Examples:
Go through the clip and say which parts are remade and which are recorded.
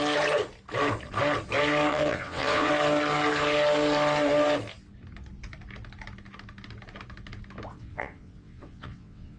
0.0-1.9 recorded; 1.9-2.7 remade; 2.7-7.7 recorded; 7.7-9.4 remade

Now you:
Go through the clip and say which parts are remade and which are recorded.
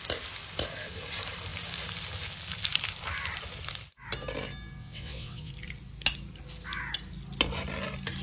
0.0-4.8 recorded; 4.8-5.5 remade; 5.5-8.2 recorded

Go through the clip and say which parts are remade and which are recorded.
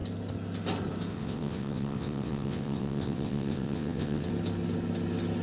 0.0-1.1 recorded; 1.1-4.3 remade; 4.3-5.4 recorded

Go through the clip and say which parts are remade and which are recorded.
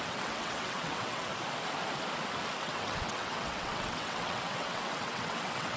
0.0-1.3 remade; 1.3-2.6 recorded; 2.6-5.8 remade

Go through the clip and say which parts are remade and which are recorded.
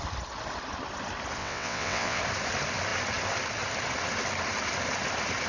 0.0-1.4 recorded; 1.4-2.2 remade; 2.2-5.5 recorded